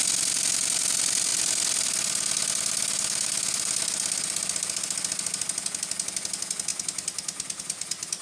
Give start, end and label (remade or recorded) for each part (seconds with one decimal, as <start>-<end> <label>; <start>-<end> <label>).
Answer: 0.0-8.2 recorded